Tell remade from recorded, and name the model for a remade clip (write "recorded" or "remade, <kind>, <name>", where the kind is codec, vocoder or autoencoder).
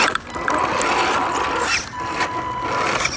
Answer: recorded